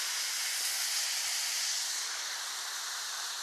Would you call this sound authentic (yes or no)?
yes